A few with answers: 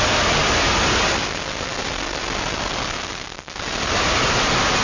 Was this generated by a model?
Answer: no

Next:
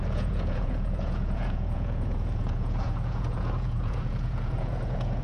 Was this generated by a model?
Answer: yes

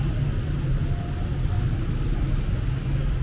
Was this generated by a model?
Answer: no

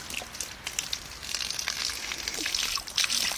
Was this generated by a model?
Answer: no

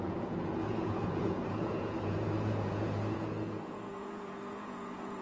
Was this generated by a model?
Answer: yes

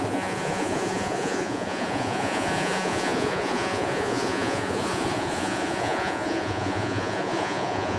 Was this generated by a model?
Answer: yes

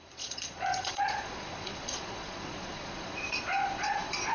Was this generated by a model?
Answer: yes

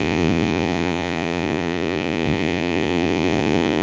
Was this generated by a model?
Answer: yes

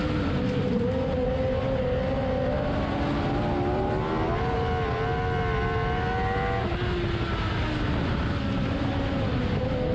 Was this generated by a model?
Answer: no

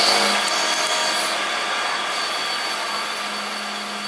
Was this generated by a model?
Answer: no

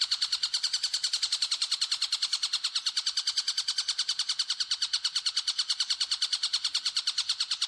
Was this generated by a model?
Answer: no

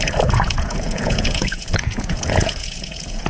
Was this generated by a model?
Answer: yes